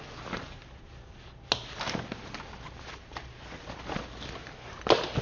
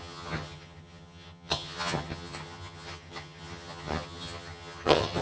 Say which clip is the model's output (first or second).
second